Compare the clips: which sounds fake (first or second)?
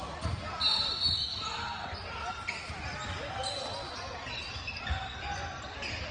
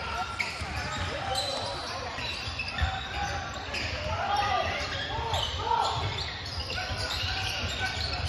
second